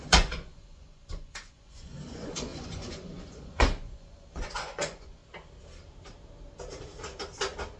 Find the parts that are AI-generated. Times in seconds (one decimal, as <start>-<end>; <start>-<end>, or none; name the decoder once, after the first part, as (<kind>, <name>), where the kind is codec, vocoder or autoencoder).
0.0-5.2 (vocoder, Vocos)